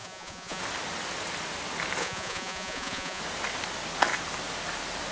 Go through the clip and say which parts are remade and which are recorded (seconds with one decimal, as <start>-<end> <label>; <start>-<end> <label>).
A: 0.0-0.6 remade; 0.6-2.0 recorded; 2.0-3.2 remade; 3.2-5.1 recorded